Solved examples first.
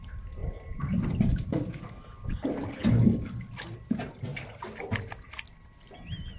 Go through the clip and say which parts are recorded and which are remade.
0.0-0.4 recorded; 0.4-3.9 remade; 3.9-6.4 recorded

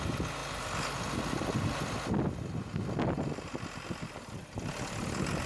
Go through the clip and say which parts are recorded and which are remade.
0.0-5.5 recorded

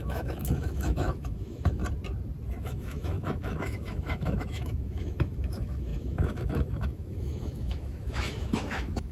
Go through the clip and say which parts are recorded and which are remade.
0.0-1.8 remade; 1.8-2.6 recorded; 2.6-9.1 remade

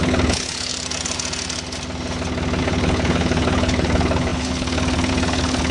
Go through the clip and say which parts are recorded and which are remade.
0.0-0.7 remade; 0.7-2.6 recorded; 2.6-5.7 remade

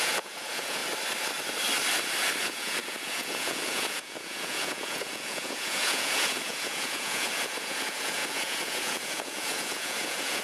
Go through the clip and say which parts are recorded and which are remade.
0.0-0.8 remade; 0.8-2.4 recorded; 2.4-10.4 remade